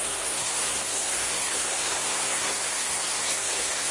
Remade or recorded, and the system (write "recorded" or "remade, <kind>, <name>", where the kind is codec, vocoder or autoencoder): remade, codec, SNAC